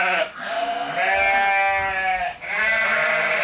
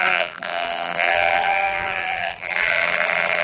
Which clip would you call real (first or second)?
first